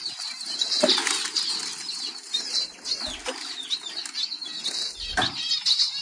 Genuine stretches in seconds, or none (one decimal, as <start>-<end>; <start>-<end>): 1.7-3.3